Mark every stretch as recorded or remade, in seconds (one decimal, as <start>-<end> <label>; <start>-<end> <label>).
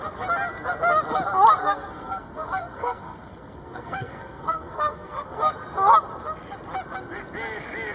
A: 0.0-1.6 recorded; 1.6-5.5 remade; 5.5-7.9 recorded